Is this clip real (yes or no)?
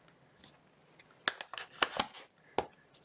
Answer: yes